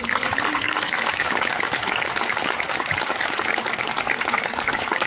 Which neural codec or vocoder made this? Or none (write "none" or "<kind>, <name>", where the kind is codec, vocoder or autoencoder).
codec, DAC